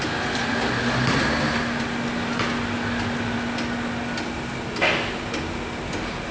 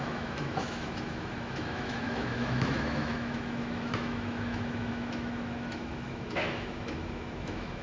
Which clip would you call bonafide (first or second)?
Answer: first